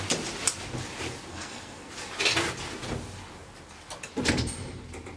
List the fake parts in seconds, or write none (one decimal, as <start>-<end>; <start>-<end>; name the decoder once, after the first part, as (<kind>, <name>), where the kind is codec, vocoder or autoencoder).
1.3-1.9 (codec, SNAC)